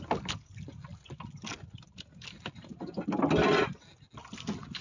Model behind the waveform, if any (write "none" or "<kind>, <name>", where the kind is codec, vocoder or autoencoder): none